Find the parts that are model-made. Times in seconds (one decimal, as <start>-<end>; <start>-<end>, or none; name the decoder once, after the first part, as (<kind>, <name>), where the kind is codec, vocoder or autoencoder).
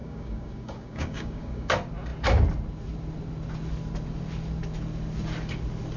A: 0.0-1.7 (codec, DAC)